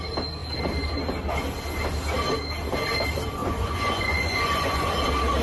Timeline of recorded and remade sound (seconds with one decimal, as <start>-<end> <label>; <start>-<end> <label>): 0.0-3.4 recorded; 3.4-4.9 remade; 4.9-5.4 recorded